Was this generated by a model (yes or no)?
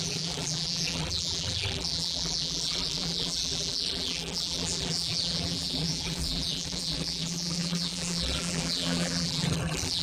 yes